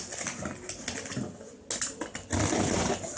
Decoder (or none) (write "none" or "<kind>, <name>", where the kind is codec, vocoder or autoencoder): none